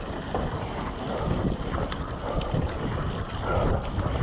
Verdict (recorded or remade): recorded